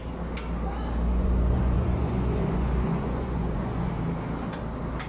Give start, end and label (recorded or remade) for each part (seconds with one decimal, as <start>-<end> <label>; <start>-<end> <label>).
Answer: 0.0-1.1 recorded; 1.1-3.9 remade; 3.9-5.1 recorded